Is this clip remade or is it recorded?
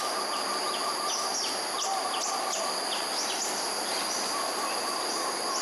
recorded